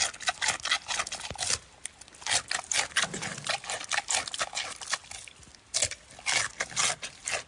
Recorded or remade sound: recorded